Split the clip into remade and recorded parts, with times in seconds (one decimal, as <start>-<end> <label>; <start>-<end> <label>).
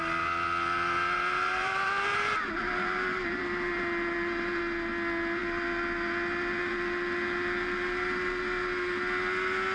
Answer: 0.0-1.3 recorded; 1.3-4.6 remade; 4.6-9.7 recorded